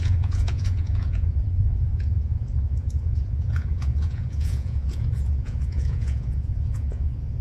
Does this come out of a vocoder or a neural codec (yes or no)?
yes